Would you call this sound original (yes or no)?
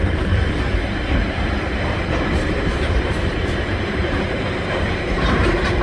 no